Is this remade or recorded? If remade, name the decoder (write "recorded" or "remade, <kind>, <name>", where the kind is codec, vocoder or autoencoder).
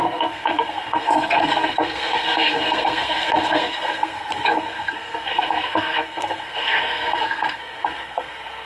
remade, codec, SNAC